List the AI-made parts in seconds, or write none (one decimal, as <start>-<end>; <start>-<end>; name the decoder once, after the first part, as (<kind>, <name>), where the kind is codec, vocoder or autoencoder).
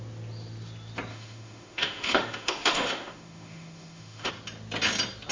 1.1-4.3 (autoencoder, DAC-VAE)